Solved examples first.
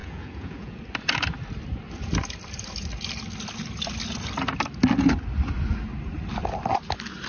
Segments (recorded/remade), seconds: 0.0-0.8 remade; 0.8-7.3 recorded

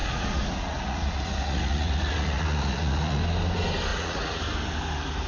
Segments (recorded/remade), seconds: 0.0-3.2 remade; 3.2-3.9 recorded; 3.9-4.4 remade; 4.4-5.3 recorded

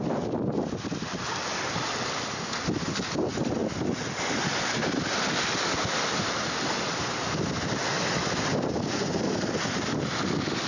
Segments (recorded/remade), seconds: 0.0-10.7 recorded

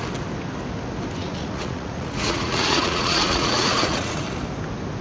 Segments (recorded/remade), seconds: 0.0-1.2 recorded; 1.2-4.2 remade; 4.2-5.0 recorded